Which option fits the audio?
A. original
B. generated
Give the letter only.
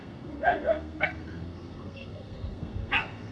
B